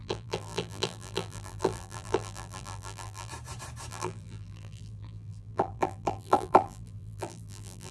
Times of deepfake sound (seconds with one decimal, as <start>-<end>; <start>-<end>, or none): 0.0-3.3; 3.9-7.9